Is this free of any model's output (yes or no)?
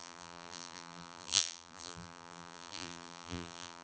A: no